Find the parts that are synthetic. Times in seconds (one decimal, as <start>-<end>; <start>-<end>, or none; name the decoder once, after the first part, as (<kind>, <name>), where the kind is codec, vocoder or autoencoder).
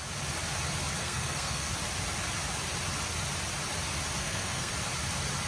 1.0-1.7 (codec, SNAC); 4.2-4.7